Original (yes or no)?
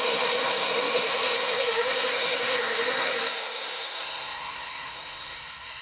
no